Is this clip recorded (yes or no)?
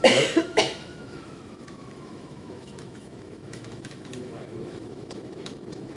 no